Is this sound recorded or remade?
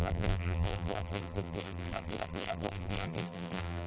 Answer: remade